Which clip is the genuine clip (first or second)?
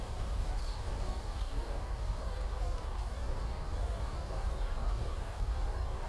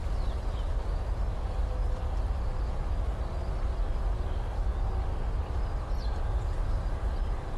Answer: second